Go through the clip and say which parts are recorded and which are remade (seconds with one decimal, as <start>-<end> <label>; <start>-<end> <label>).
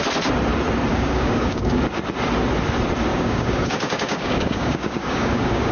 0.0-0.9 recorded; 0.9-1.8 remade; 1.8-3.1 recorded; 3.1-5.7 remade